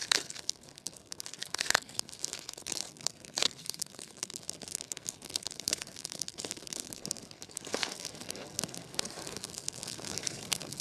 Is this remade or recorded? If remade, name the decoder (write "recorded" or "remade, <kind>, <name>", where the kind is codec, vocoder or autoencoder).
remade, codec, SNAC